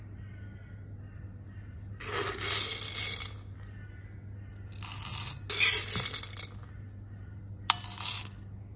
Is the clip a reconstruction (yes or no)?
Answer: no